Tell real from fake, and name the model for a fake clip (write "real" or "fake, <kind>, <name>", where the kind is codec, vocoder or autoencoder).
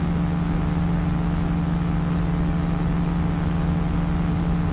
real